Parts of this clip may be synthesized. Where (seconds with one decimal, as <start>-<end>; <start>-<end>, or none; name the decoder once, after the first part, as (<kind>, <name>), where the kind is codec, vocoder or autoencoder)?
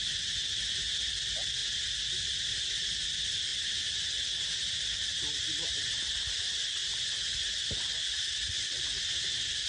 1.0-3.5 (vocoder, BigVGAN v2); 5.6-6.8; 7.4-9.7